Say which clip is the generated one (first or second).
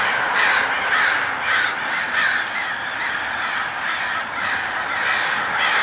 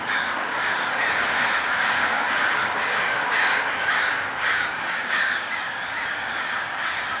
second